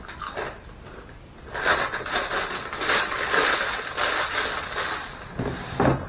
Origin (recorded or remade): recorded